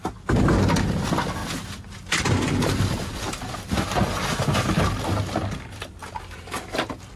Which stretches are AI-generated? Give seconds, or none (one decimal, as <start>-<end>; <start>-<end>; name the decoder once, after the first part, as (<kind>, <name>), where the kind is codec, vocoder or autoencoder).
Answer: none